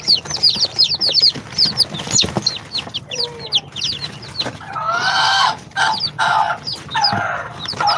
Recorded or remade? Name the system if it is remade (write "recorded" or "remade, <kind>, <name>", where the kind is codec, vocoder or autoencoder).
recorded